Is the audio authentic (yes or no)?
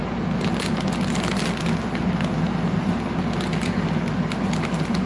yes